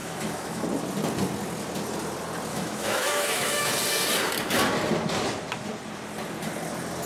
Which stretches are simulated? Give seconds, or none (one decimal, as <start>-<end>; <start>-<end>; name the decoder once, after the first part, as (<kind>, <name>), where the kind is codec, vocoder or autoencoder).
0.0-0.6 (autoencoder, DAC-VAE); 2.5-3.7